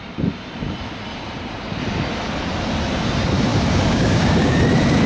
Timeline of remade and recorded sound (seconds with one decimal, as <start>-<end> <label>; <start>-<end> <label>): 0.0-3.5 recorded; 3.5-4.6 remade; 4.6-5.1 recorded

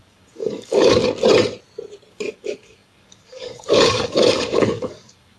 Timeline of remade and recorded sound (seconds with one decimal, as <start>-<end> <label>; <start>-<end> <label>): 0.0-1.0 remade; 1.0-2.1 recorded; 2.1-5.4 remade

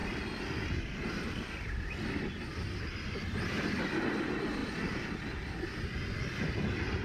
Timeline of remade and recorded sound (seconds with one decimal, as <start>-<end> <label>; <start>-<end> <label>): 0.0-7.0 recorded

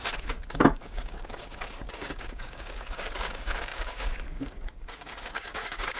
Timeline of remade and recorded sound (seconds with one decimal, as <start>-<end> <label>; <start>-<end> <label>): 0.0-6.0 remade

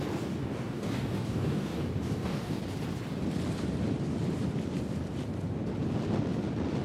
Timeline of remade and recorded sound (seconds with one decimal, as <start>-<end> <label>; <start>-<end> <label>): 0.0-0.4 recorded; 0.4-2.6 remade; 2.6-6.8 recorded

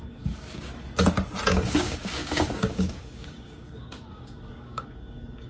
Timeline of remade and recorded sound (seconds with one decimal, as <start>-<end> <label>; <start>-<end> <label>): 0.0-0.7 remade; 0.7-1.5 recorded; 1.5-5.5 remade

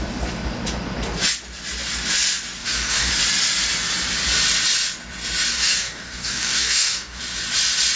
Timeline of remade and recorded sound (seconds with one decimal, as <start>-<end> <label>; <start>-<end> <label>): 0.0-2.6 recorded; 2.6-3.1 remade; 3.1-5.5 recorded; 5.5-7.2 remade; 7.2-8.0 recorded